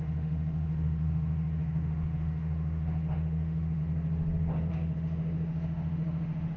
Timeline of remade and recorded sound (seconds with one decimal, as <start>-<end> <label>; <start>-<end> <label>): 0.0-3.8 remade; 3.8-4.7 recorded; 4.7-6.6 remade